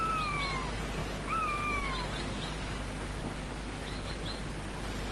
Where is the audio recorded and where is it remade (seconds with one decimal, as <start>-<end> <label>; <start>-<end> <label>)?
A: 0.0-1.0 recorded; 1.0-4.1 remade; 4.1-5.1 recorded